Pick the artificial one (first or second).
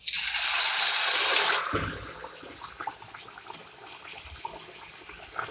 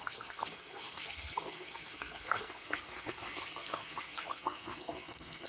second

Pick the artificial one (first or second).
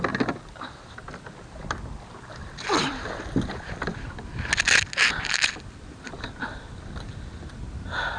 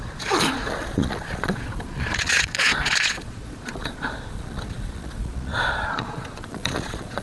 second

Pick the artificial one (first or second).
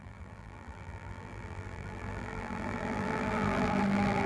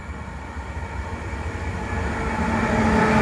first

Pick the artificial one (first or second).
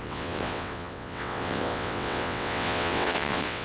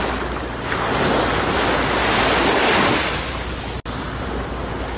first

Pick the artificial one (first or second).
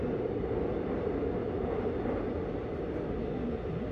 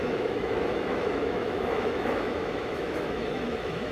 second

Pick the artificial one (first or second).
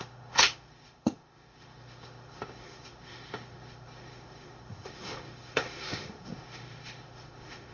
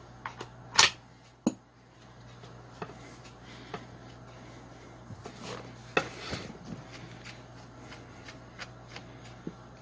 first